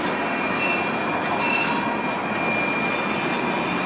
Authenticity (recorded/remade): recorded